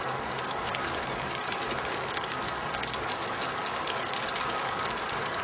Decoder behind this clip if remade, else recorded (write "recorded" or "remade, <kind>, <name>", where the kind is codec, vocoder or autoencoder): remade, codec, DAC